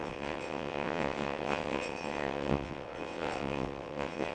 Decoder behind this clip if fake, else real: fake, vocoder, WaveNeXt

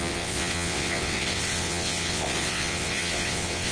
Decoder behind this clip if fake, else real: fake, vocoder, WaveNeXt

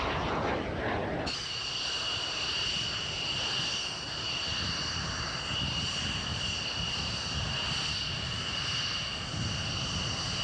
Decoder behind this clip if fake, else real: real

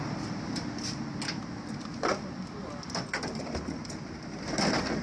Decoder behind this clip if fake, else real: real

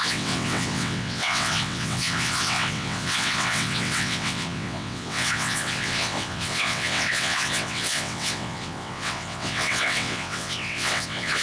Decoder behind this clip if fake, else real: fake, vocoder, WaveNeXt